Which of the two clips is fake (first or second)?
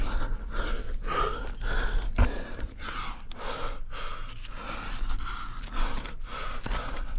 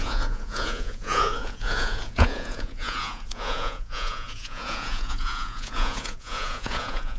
second